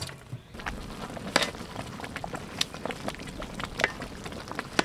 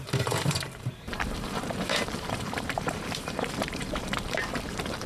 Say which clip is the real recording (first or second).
first